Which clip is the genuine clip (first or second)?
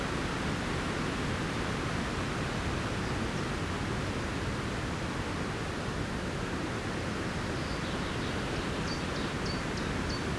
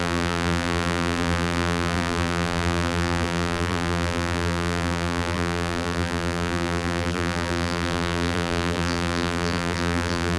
first